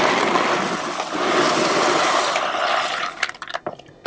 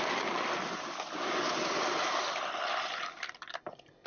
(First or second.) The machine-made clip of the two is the second